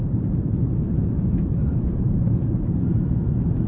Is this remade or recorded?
remade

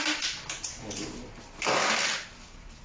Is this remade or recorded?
remade